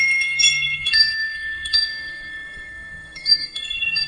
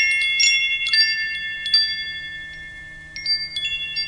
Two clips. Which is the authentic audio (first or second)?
second